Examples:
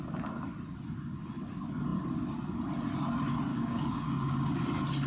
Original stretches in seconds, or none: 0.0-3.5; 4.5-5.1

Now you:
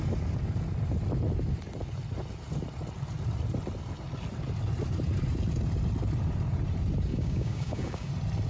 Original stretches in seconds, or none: 0.0-7.1; 8.1-8.5